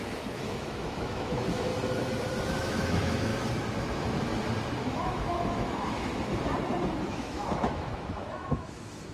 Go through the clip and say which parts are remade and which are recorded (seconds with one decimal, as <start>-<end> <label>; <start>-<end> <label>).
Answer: 0.0-1.7 remade; 1.7-2.5 recorded; 2.5-3.3 remade; 3.3-3.9 recorded; 3.9-4.3 remade; 4.3-4.8 recorded; 4.8-6.1 remade; 6.1-7.1 recorded; 7.1-9.1 remade